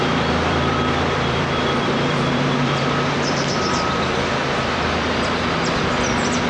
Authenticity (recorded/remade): remade